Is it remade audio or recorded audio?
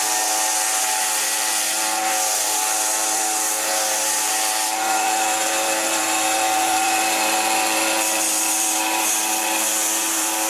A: remade